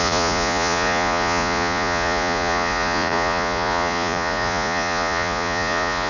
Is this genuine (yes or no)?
no